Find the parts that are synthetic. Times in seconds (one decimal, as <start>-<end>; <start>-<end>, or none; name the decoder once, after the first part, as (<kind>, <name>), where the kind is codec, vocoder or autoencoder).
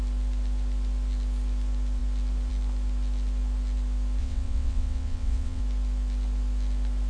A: 4.2-5.6 (vocoder, WaveNeXt)